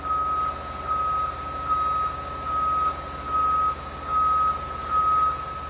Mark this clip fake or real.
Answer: real